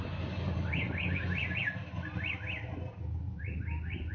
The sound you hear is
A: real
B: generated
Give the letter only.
B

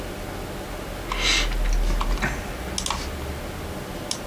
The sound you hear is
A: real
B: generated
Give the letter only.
A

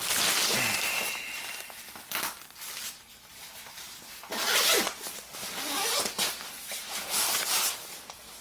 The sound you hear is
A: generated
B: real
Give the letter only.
B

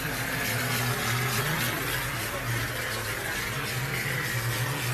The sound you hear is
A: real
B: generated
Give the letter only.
A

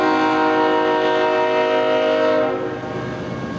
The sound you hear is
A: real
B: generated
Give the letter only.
A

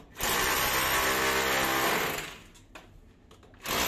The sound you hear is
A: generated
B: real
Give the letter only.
B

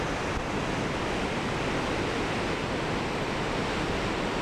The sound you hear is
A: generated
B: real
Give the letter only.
B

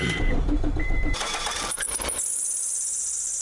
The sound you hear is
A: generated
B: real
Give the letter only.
A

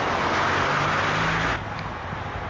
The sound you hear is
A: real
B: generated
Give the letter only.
A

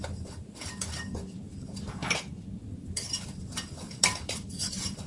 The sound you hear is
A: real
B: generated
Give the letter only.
B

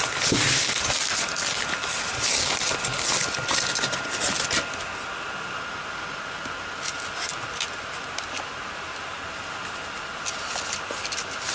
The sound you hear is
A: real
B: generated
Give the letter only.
A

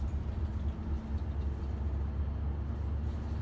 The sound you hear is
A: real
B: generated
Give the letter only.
A